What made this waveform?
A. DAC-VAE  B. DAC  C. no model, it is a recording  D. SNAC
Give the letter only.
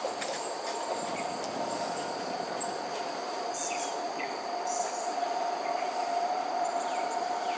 C